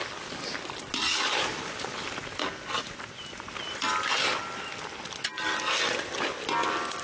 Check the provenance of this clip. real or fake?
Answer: real